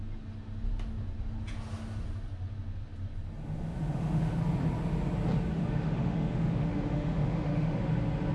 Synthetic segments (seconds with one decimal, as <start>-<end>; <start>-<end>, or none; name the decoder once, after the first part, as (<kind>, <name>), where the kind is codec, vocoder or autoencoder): 3.4-4.4 (autoencoder, DAC-VAE); 5.5-7.8